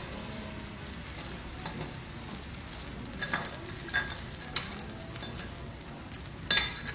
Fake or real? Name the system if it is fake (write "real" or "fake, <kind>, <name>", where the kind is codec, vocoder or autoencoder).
real